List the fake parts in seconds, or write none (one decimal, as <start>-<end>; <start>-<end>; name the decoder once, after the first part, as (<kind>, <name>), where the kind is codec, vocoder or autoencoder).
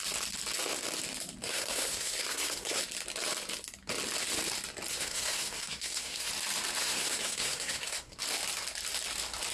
1.4-2.8 (codec, SNAC); 4.9-6.3; 6.8-8.2